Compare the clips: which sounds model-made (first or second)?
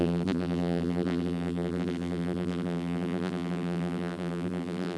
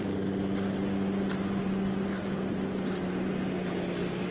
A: first